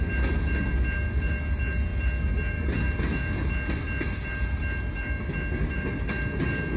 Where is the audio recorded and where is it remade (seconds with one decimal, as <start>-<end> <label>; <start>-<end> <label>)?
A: 0.0-6.8 recorded